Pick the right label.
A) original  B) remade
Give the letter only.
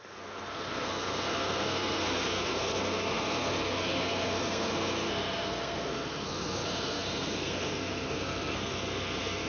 B